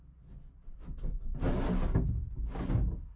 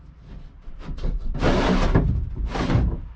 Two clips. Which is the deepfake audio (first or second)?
second